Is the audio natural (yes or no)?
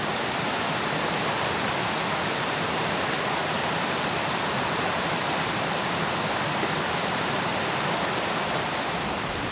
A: yes